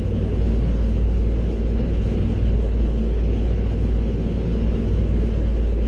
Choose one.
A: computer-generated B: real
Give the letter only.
A